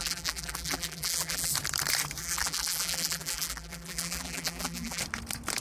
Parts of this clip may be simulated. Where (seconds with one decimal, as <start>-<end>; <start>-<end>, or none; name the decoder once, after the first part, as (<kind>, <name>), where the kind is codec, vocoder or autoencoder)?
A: 0.0-1.5 (vocoder, BigVGAN v2); 2.2-5.0